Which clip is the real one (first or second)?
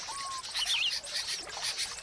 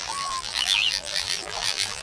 first